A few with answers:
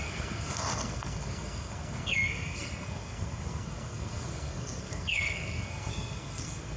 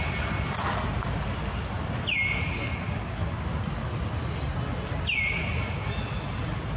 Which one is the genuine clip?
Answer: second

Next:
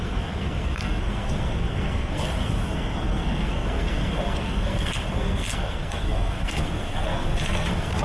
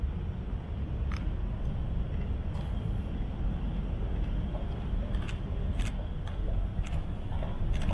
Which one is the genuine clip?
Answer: second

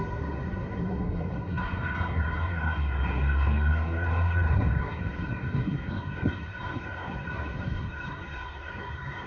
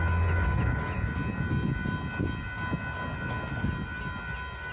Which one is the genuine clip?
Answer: second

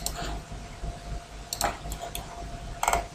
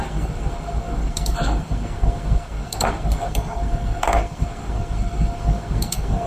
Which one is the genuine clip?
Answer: first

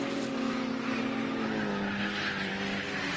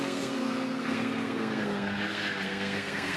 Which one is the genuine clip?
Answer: first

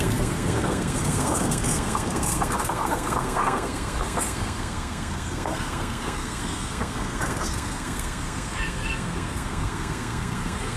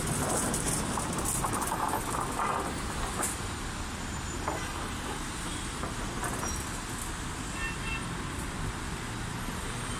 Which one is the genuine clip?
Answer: second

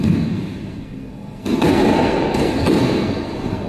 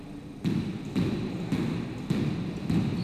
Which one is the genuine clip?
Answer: second